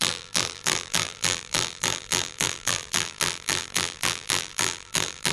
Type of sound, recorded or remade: remade